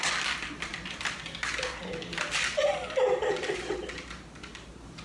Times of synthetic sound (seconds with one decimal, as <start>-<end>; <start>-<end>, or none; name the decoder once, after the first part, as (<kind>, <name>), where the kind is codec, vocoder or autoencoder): none